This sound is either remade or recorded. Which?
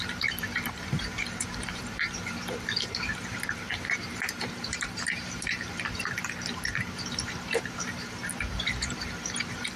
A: remade